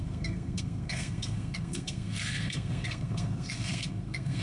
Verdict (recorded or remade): remade